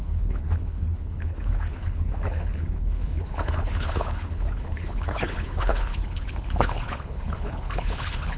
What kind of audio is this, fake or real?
fake